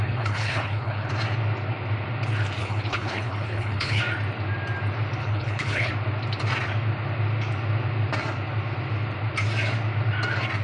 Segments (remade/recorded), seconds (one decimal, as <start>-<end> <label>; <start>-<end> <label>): 0.0-1.1 remade; 1.1-2.6 recorded; 2.6-4.0 remade; 4.0-5.2 recorded; 5.2-5.9 remade; 5.9-10.6 recorded